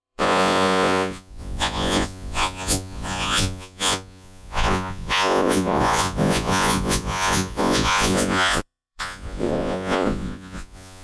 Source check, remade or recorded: remade